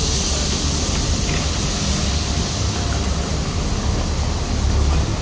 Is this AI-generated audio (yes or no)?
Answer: no